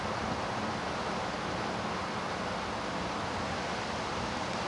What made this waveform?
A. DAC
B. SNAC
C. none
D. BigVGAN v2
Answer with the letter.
C